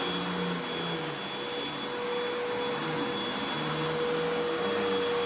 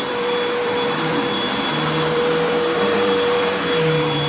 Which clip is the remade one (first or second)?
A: second